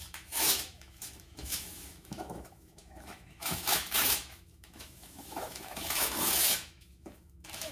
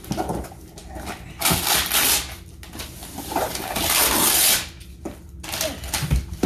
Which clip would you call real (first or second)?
second